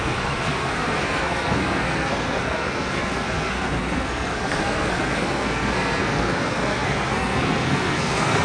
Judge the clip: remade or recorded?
remade